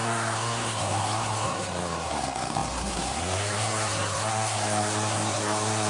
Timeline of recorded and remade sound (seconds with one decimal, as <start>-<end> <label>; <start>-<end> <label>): 0.0-5.9 remade